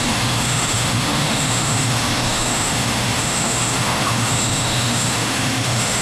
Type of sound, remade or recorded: remade